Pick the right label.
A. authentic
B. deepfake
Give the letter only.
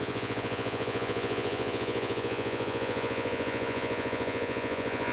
B